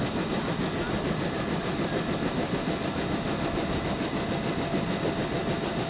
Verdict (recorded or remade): recorded